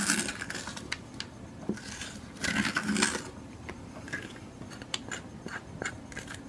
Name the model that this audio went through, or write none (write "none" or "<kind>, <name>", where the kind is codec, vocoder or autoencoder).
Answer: none